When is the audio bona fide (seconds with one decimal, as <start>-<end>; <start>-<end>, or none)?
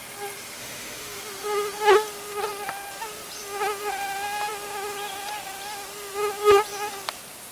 0.0-0.6; 1.2-7.5